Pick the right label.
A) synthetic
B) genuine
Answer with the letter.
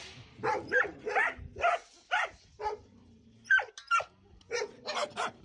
B